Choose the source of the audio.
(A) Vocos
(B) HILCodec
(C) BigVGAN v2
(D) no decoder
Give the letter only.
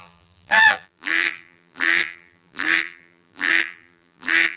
C